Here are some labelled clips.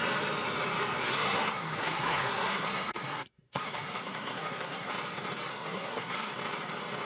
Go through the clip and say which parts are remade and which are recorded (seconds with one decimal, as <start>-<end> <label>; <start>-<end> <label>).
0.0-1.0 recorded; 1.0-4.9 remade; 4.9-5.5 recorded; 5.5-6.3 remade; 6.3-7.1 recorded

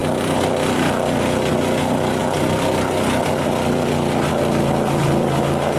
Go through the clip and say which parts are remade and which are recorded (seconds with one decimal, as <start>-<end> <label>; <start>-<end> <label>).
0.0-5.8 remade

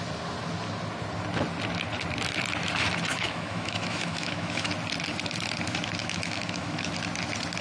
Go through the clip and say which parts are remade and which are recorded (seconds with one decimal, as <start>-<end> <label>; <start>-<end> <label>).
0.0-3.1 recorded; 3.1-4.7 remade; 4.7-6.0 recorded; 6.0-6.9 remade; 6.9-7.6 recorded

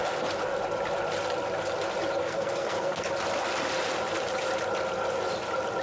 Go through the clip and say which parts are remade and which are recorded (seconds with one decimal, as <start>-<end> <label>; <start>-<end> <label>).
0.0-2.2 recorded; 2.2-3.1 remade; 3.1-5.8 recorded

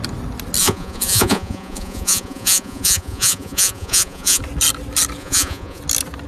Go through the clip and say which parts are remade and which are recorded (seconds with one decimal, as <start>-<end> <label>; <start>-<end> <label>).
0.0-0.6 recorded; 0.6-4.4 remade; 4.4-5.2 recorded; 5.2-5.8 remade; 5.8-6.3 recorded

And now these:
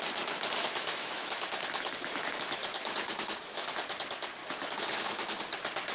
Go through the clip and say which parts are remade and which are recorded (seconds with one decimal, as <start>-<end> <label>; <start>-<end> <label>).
0.0-0.6 recorded; 0.6-3.7 remade; 3.7-4.4 recorded; 4.4-5.4 remade; 5.4-5.9 recorded